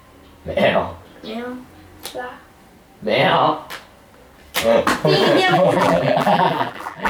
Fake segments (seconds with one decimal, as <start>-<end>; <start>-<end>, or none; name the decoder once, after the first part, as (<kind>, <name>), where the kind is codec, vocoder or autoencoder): 5.5-7.1 (vocoder, BigVGAN v2)